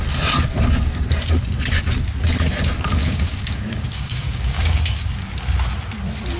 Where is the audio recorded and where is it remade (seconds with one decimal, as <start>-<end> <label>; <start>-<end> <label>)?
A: 0.0-3.0 recorded; 3.0-5.1 remade; 5.1-6.4 recorded

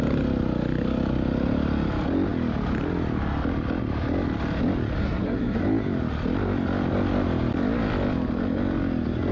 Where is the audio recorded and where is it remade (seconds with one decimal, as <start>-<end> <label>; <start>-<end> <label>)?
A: 0.0-5.0 recorded; 5.0-5.6 remade; 5.6-9.3 recorded

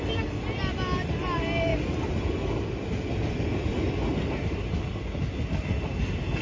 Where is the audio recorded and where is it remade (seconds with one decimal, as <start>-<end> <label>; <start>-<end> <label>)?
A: 0.0-6.4 recorded

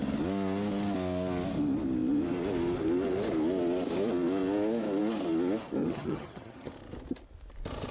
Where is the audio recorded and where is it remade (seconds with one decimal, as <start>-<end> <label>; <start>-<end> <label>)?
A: 0.0-5.8 recorded; 5.8-6.7 remade; 6.7-7.9 recorded

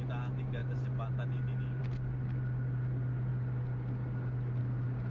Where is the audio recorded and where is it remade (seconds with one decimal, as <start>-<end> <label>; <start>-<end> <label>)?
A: 0.0-5.1 recorded

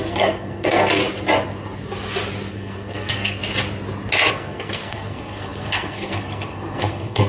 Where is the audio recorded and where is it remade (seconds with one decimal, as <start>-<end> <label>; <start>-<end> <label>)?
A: 0.0-1.0 remade; 1.0-2.5 recorded; 2.5-3.4 remade; 3.4-4.3 recorded; 4.3-7.3 remade